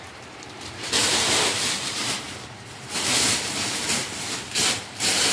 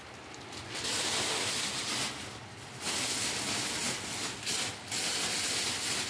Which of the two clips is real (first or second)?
second